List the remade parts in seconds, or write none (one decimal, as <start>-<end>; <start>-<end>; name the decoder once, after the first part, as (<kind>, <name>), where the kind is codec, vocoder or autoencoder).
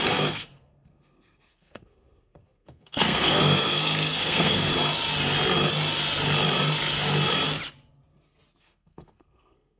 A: 0.0-4.7 (codec, SNAC); 8.6-9.8